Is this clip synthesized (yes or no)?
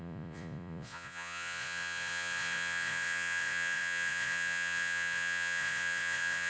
yes